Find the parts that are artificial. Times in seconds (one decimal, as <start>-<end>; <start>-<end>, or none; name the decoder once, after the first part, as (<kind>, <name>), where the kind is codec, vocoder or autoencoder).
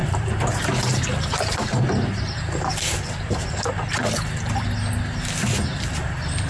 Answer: 0.0-3.9 (vocoder, BigVGAN v2)